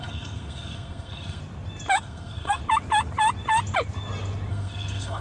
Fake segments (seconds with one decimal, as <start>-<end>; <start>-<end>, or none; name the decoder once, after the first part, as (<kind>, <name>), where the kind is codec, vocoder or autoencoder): 0.0-1.4 (codec, SNAC); 2.0-2.6; 4.5-5.2